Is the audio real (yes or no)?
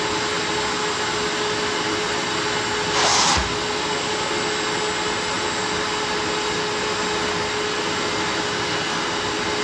yes